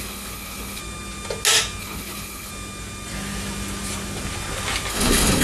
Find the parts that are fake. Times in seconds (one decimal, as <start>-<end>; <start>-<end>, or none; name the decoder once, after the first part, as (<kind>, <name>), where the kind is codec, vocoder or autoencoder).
0.0-0.8 (codec, HILCodec); 1.8-2.5; 4.9-5.4